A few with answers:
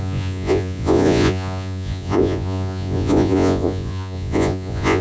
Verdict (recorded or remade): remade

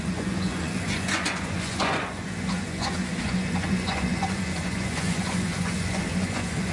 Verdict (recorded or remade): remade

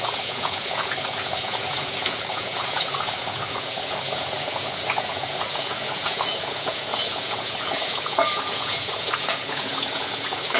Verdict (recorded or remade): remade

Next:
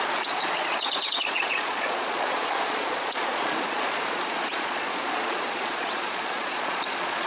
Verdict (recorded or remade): remade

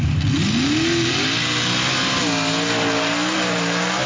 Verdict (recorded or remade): recorded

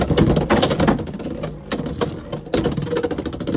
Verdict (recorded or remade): recorded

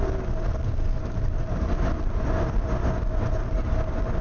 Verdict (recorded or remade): recorded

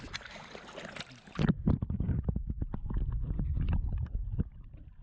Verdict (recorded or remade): recorded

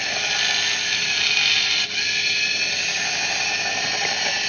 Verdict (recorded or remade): recorded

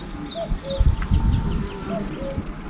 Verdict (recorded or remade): recorded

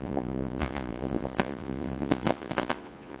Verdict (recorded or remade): remade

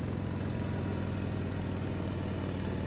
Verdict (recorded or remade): remade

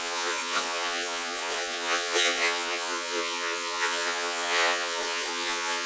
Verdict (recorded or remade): remade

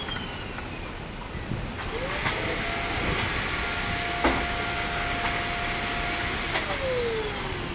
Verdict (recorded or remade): recorded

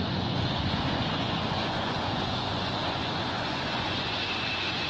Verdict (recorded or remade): remade